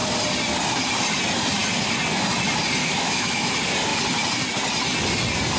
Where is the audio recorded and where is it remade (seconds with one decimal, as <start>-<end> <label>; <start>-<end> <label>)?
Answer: 0.0-2.8 recorded; 2.8-3.5 remade; 3.5-5.6 recorded